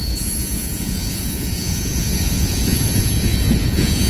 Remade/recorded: remade